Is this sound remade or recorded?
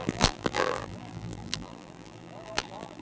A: remade